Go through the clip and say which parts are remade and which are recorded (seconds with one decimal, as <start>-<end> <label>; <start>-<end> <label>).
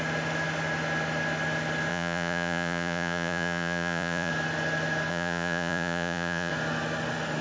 0.0-1.9 recorded; 1.9-4.3 remade; 4.3-5.1 recorded; 5.1-6.5 remade; 6.5-7.4 recorded